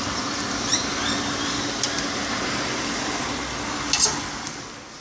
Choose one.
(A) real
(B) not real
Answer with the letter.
A